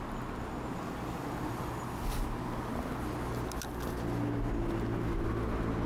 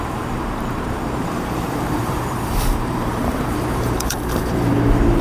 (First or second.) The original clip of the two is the first